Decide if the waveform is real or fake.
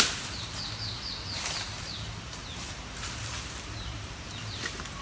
fake